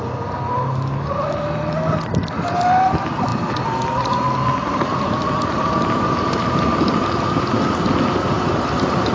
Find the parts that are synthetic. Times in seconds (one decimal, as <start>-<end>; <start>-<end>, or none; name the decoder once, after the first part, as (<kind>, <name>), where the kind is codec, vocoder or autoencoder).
none

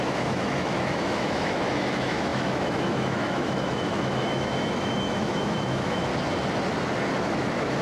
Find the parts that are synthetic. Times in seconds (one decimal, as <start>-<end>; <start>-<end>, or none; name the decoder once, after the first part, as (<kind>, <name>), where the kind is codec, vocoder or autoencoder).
0.0-6.1 (autoencoder, DAC-VAE); 7.2-7.8

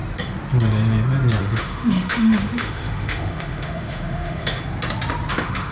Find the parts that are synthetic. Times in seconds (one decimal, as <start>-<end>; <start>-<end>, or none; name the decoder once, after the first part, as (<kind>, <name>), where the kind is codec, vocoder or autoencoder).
1.4-4.6 (autoencoder, DAC-VAE); 5.3-5.7

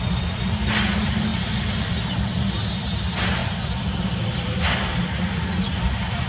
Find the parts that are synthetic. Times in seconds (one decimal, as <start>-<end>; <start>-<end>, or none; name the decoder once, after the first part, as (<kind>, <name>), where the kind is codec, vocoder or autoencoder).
none

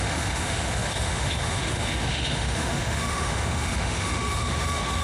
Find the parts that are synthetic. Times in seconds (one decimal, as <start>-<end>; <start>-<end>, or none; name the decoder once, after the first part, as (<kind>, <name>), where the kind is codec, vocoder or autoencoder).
0.0-5.0 (autoencoder, DAC-VAE)

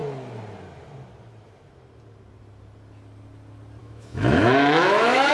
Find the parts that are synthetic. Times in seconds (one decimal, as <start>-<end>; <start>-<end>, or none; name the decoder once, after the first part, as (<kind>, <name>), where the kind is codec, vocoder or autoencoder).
3.8-5.3 (autoencoder, DAC-VAE)